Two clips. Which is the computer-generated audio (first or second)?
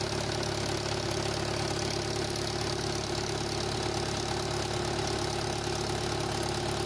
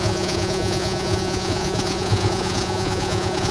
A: second